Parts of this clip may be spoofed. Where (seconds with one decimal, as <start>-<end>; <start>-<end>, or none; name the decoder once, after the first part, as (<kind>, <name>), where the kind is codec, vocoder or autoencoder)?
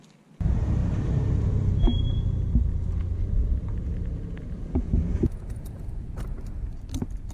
4.6-6.2 (vocoder, Vocos)